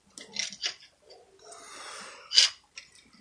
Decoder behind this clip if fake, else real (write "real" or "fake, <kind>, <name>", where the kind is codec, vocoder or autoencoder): real